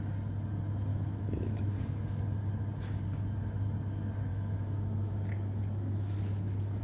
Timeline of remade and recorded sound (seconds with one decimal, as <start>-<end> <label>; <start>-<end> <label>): 0.0-0.9 recorded; 0.9-1.7 remade; 1.7-4.3 recorded; 4.3-6.8 remade